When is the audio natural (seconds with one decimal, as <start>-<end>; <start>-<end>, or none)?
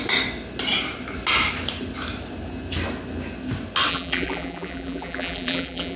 0.0-3.9